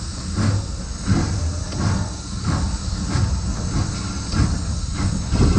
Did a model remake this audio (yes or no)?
no